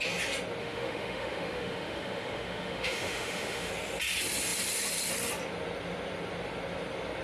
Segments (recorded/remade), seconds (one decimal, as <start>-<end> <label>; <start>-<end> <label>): 0.0-0.6 recorded; 0.6-3.7 remade; 3.7-7.2 recorded

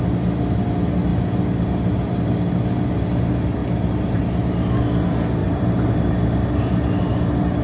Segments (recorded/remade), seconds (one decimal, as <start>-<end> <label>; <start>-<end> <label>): 0.0-3.6 recorded; 3.6-4.2 remade; 4.2-5.4 recorded; 5.4-6.1 remade; 6.1-7.6 recorded